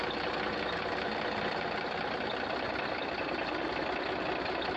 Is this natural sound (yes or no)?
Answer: yes